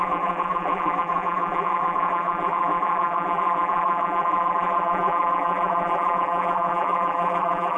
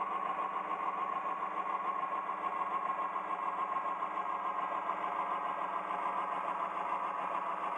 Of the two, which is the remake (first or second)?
first